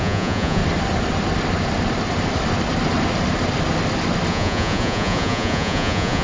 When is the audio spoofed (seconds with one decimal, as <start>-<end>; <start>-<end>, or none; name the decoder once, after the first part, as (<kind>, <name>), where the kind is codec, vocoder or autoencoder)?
0.0-0.6 (vocoder, Vocos); 4.3-6.2